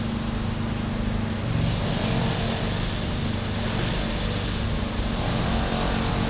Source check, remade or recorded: recorded